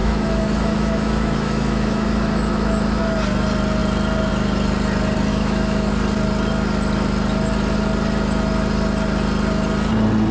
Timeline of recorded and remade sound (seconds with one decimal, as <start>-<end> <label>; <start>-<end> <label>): 0.0-3.0 remade; 3.0-5.3 recorded; 5.3-5.9 remade; 5.9-10.3 recorded